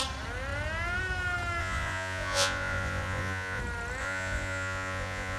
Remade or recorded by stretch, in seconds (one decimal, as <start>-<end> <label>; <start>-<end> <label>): 0.0-1.6 recorded; 1.6-3.6 remade; 3.6-4.0 recorded; 4.0-5.4 remade